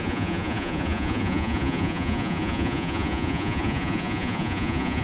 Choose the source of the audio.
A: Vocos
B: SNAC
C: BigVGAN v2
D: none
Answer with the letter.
A